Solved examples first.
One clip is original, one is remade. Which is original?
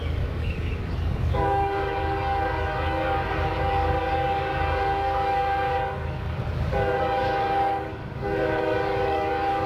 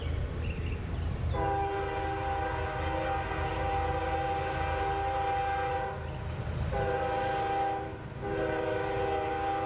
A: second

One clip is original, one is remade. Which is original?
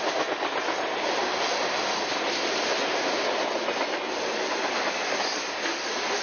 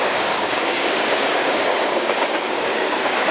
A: first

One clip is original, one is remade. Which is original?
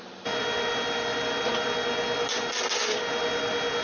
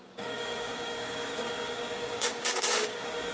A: first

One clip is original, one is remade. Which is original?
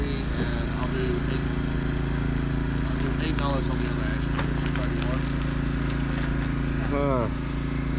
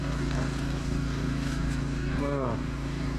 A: first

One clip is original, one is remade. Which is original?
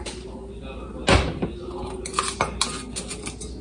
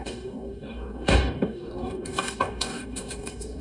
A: first